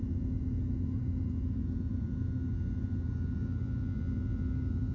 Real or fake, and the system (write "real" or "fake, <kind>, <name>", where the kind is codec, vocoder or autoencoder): real